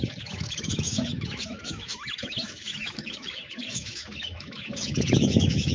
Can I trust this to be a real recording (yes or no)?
no